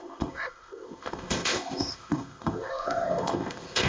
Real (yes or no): no